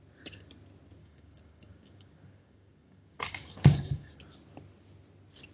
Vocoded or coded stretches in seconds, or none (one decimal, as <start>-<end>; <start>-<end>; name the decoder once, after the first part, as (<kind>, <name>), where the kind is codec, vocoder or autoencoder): 1.0-4.2 (codec, DAC)